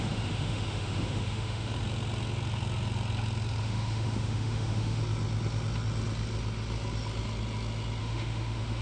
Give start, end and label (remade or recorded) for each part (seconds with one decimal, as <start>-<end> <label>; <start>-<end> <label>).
0.0-1.7 remade; 1.7-3.6 recorded; 3.6-5.0 remade; 5.0-8.0 recorded; 8.0-8.8 remade